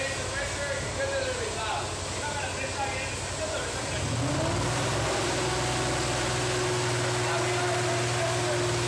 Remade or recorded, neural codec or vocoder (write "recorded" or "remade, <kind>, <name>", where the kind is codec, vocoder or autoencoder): recorded